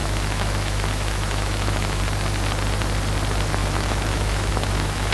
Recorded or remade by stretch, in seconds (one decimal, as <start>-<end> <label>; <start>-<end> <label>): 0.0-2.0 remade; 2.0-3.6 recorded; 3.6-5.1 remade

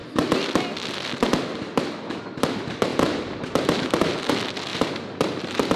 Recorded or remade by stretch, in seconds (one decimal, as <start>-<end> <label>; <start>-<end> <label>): 0.0-4.7 recorded; 4.7-5.8 remade

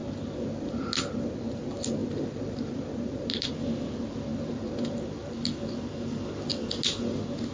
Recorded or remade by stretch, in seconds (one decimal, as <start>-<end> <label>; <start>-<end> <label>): 0.0-1.5 remade; 1.5-2.0 recorded; 2.0-3.5 remade; 3.5-4.3 recorded; 4.3-5.8 remade; 5.8-7.5 recorded